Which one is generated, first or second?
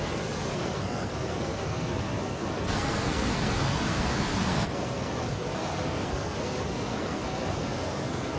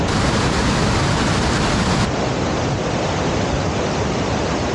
first